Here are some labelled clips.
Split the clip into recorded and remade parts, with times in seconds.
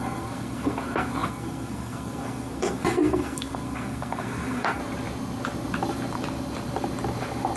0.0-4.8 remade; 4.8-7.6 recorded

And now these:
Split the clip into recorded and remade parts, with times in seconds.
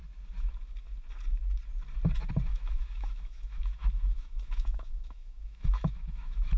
0.0-2.5 recorded; 2.5-6.6 remade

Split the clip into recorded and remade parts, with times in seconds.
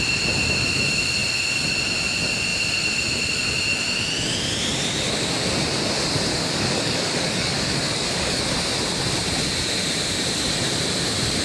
0.0-6.3 recorded; 6.3-8.4 remade; 8.4-11.4 recorded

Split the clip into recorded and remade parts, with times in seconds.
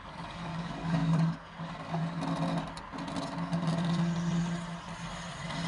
0.0-2.0 remade; 2.0-5.7 recorded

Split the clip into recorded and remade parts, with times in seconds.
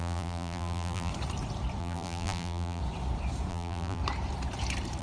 0.0-1.1 remade; 1.1-1.8 recorded; 1.8-2.8 remade; 2.8-3.5 recorded; 3.5-4.0 remade; 4.0-5.0 recorded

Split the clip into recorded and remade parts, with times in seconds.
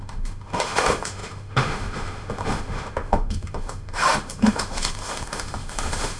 0.0-6.2 remade